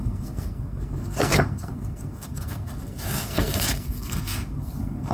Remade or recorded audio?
remade